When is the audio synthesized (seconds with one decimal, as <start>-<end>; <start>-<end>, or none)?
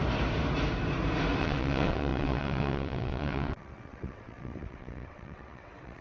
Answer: 1.4-6.0